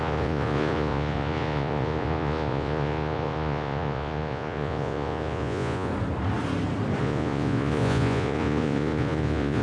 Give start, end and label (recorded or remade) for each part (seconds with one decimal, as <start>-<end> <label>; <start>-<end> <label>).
0.0-5.9 remade; 5.9-7.0 recorded; 7.0-9.6 remade